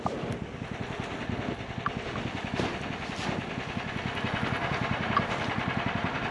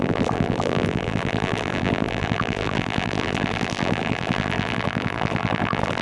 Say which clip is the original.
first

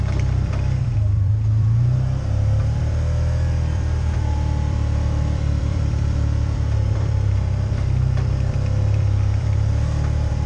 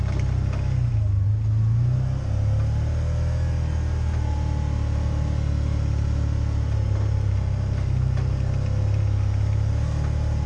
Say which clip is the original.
second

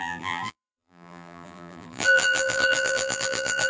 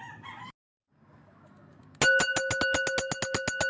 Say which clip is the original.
second